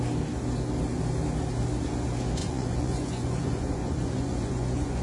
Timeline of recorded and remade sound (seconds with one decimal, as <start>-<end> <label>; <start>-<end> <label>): 0.0-2.4 recorded; 2.4-5.0 remade

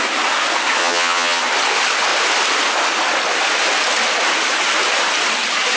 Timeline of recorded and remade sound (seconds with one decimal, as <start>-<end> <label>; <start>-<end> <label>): 0.0-0.8 recorded; 0.8-1.4 remade; 1.4-5.8 recorded